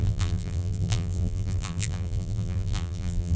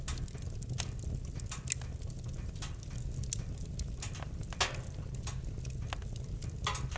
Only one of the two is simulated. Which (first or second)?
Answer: first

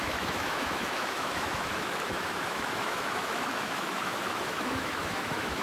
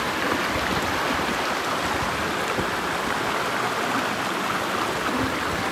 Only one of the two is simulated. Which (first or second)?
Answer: first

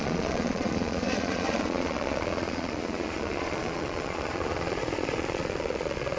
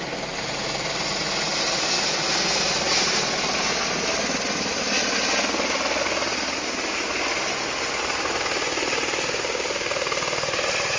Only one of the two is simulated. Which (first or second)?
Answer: first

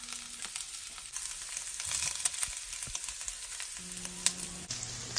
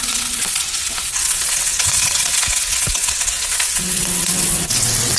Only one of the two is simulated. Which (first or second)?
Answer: second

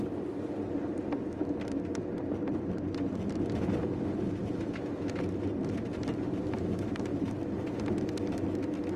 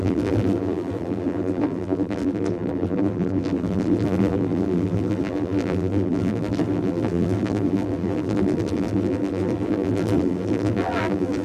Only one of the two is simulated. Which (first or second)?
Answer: second